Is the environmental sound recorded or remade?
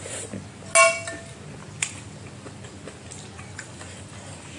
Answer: recorded